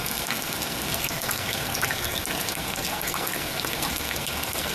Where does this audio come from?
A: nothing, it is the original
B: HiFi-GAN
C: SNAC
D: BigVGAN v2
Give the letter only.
C